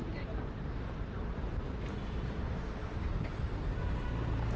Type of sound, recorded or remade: remade